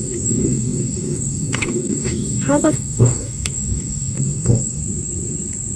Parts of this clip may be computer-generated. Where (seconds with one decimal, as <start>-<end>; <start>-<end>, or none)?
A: 0.0-4.8